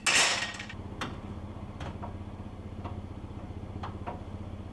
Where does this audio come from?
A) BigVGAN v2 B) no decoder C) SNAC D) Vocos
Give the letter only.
B